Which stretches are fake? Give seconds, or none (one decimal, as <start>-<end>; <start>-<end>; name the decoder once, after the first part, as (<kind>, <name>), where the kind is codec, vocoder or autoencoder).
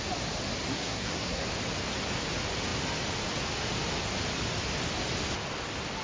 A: 0.7-1.5 (codec, SNAC)